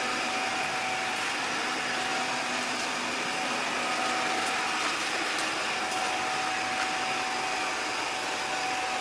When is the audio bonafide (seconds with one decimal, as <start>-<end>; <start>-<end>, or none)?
0.0-9.0